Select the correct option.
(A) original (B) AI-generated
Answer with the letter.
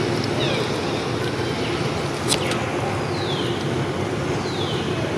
A